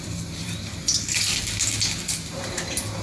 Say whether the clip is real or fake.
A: real